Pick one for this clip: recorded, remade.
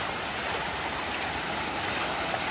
recorded